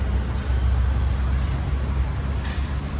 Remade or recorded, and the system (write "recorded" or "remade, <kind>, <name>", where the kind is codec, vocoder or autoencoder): recorded